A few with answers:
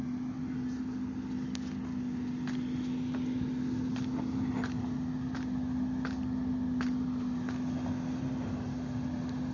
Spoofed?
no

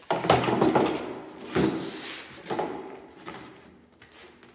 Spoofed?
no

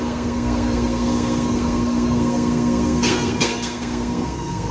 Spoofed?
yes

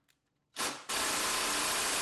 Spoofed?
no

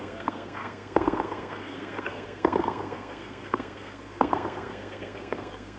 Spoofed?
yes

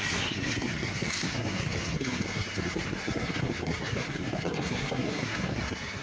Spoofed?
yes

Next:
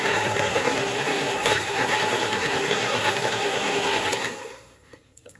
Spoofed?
yes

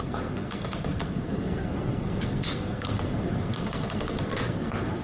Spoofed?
yes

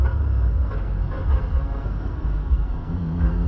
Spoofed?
yes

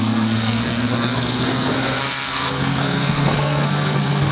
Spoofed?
yes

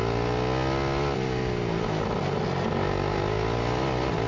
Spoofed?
no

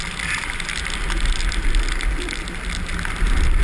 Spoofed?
no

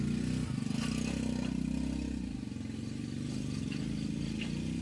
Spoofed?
no